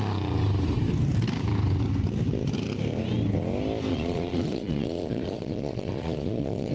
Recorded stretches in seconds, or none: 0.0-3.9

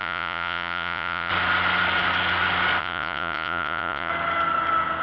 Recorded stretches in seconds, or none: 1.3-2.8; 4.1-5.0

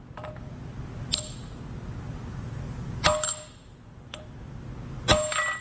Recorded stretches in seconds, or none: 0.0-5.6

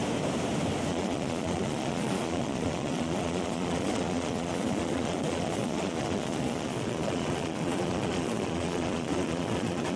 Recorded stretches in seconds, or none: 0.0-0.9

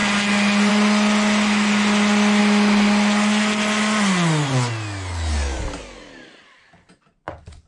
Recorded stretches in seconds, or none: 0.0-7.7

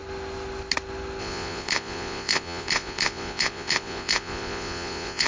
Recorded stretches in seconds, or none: 0.0-1.2

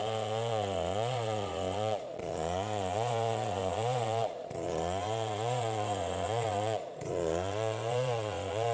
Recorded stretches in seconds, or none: none

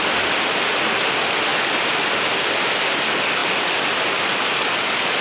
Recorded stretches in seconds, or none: 0.0-5.2